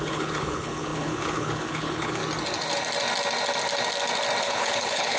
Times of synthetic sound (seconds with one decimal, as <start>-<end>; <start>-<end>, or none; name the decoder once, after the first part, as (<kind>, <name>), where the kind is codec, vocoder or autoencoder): 0.0-2.2 (codec, HILCodec); 4.4-5.2